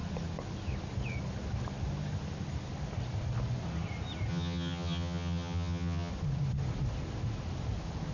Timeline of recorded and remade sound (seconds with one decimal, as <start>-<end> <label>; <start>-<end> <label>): 0.0-4.3 recorded; 4.3-6.1 remade; 6.1-8.1 recorded